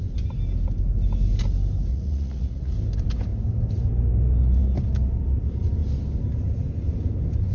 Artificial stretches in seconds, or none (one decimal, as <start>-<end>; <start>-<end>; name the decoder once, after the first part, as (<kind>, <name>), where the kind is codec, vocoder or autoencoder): 1.9-2.7 (vocoder, Vocos)